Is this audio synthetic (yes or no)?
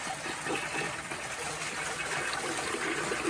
no